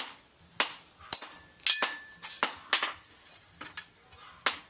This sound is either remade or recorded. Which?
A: recorded